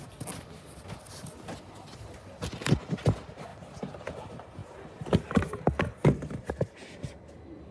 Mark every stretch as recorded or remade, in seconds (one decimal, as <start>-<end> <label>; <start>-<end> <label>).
0.0-7.7 recorded

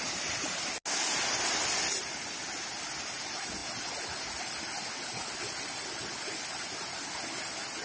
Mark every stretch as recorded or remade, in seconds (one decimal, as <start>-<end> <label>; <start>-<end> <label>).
0.0-7.8 recorded

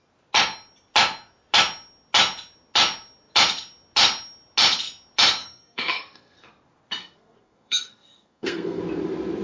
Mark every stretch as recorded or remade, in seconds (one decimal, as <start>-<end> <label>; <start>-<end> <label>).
0.0-5.4 recorded; 5.4-6.5 remade; 6.5-7.0 recorded; 7.0-8.8 remade; 8.8-9.4 recorded

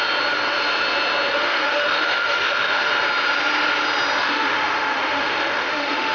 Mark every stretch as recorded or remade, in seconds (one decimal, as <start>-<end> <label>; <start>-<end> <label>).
0.0-1.3 recorded; 1.3-2.9 remade; 2.9-4.2 recorded; 4.2-6.1 remade